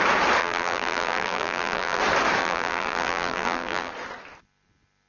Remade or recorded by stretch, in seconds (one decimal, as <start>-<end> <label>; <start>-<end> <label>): 0.0-0.4 recorded; 0.4-2.0 remade; 2.0-2.4 recorded; 2.4-3.9 remade; 3.9-5.1 recorded